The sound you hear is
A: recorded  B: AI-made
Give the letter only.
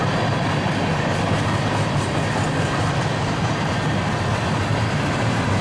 A